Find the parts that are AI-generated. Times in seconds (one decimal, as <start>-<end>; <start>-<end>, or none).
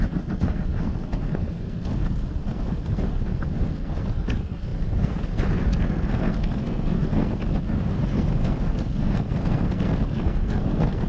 0.0-11.1